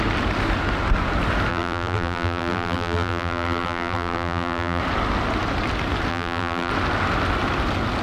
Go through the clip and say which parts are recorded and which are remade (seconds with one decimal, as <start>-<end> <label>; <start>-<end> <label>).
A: 0.0-1.5 recorded; 1.5-4.8 remade; 4.8-6.1 recorded; 6.1-6.7 remade; 6.7-8.0 recorded

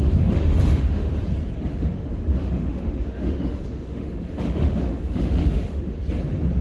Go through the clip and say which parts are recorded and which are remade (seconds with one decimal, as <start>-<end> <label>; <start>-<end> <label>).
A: 0.0-1.1 remade; 1.1-1.7 recorded; 1.7-6.0 remade; 6.0-6.6 recorded